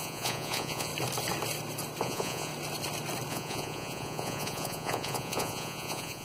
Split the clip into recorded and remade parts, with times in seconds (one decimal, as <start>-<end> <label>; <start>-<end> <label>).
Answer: 0.0-0.9 remade; 0.9-2.0 recorded; 2.0-2.5 remade; 2.5-3.3 recorded; 3.3-6.2 remade